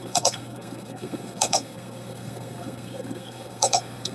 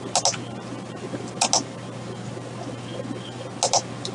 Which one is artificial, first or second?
first